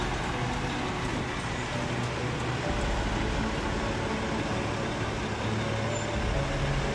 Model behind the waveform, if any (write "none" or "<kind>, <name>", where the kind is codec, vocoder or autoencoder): none